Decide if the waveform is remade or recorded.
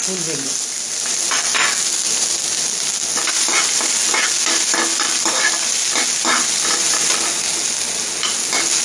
recorded